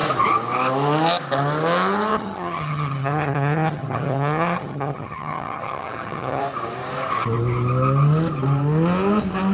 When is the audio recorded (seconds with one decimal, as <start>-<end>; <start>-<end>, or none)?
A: 0.0-2.1; 6.4-9.5